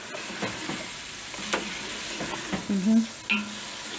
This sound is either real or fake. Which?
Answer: real